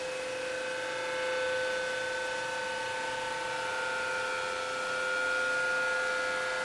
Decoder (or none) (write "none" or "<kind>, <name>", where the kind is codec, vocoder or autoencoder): none